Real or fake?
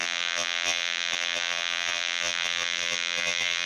fake